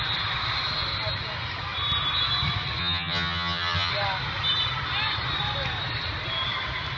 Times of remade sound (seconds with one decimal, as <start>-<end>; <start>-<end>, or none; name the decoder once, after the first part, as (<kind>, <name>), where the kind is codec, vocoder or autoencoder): 2.8-3.9 (vocoder, HiFi-GAN)